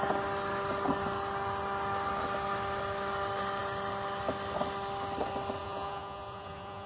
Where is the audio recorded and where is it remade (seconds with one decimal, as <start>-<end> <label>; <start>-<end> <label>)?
0.0-5.6 recorded; 5.6-6.9 remade